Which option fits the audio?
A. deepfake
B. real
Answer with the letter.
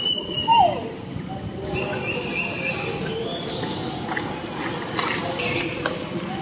B